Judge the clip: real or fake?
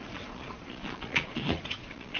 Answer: fake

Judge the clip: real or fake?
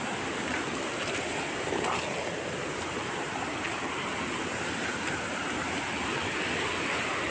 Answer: real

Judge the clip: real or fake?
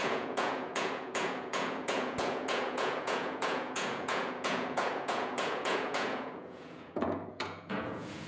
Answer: fake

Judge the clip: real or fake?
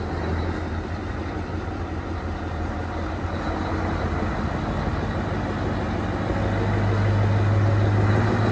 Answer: real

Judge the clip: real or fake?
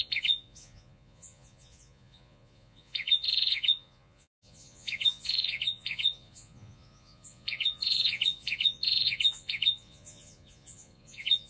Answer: fake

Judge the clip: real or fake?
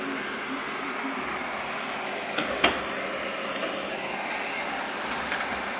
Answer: real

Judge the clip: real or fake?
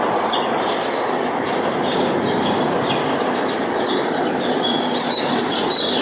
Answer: real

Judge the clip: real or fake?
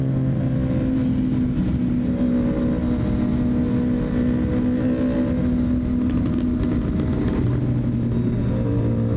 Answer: real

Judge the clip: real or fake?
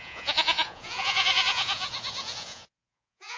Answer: fake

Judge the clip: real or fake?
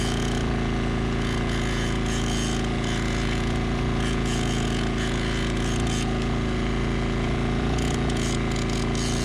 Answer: fake